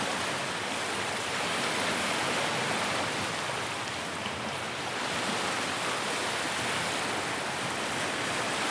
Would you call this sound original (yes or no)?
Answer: yes